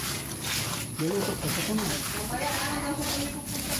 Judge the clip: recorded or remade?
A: recorded